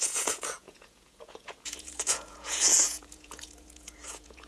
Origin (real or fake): fake